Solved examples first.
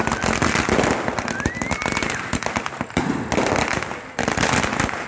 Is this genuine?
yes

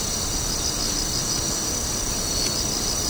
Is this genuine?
yes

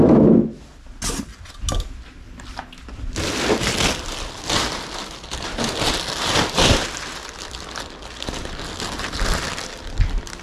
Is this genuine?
yes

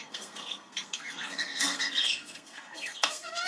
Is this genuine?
no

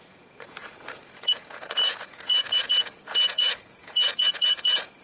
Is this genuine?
no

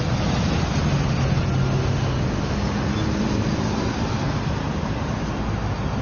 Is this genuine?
yes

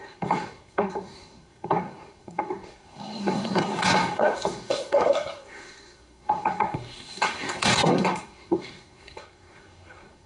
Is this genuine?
no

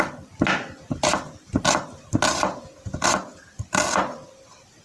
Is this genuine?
yes